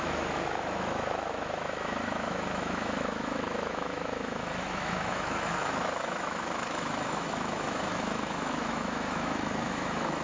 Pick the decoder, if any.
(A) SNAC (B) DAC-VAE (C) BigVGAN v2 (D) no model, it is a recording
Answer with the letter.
B